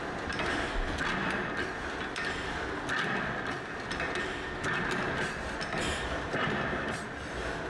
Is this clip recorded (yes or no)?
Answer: yes